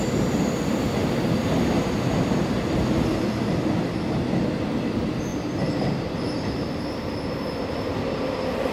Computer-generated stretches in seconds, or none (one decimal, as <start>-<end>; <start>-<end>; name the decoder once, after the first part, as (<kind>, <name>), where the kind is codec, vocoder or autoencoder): 1.0-1.6 (vocoder, BigVGAN v2); 5.3-7.2